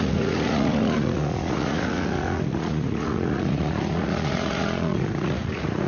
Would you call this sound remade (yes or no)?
yes